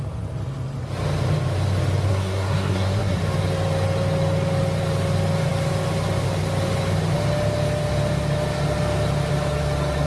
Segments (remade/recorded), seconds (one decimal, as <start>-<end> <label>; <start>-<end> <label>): 0.0-2.1 recorded; 2.1-3.2 remade; 3.2-10.1 recorded